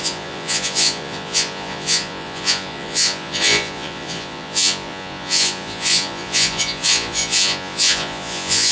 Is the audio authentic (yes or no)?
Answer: no